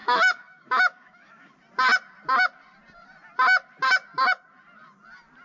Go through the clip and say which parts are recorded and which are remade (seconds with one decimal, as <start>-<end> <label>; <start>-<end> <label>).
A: 0.0-1.5 remade; 1.5-5.4 recorded